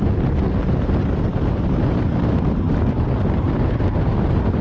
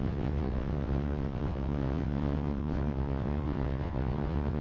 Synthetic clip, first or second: second